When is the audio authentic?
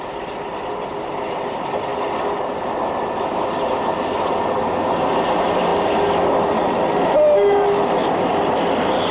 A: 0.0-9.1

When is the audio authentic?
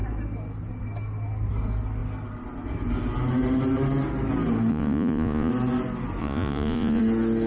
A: 0.0-4.7; 5.5-6.2; 7.0-7.5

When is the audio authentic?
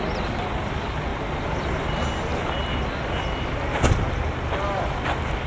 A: 0.0-1.1; 1.6-5.5